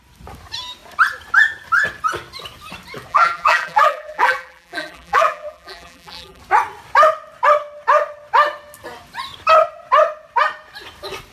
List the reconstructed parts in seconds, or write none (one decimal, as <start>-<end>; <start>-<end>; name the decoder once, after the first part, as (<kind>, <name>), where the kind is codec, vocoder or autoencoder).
3.1-6.4 (vocoder, BigVGAN v2)